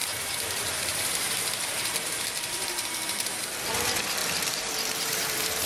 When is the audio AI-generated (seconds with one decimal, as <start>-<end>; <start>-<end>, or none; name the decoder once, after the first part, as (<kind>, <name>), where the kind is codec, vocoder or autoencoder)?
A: 0.0-3.4 (vocoder, BigVGAN v2); 4.2-5.7